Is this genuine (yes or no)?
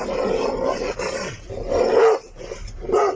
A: no